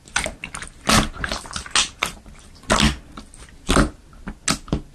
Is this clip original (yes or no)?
yes